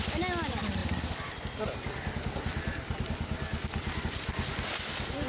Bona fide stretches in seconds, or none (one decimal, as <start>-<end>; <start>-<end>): 0.0-5.3